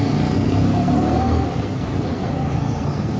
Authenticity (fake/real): fake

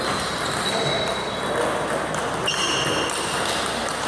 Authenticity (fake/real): real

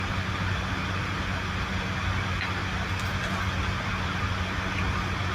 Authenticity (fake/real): real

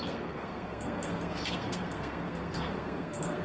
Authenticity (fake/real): fake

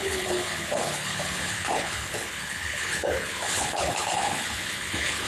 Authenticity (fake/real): fake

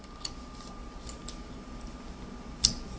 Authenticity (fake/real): real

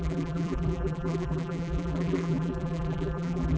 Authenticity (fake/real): fake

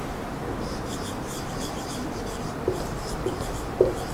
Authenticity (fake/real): fake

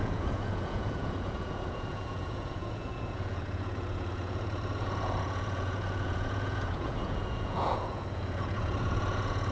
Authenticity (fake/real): fake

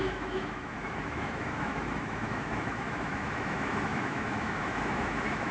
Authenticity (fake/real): fake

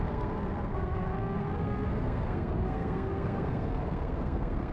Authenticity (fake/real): fake